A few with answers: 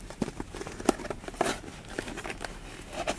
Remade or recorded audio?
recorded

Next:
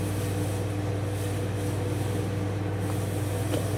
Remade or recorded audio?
recorded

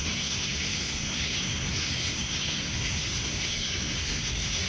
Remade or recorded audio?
remade